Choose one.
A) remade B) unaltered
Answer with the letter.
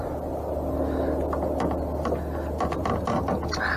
B